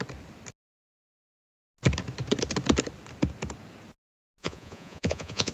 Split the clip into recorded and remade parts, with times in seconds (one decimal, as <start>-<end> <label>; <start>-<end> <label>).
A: 0.0-4.4 recorded; 4.4-5.5 remade